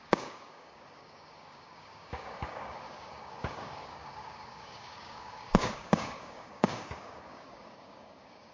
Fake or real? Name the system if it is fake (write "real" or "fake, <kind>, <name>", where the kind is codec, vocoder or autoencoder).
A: fake, codec, DAC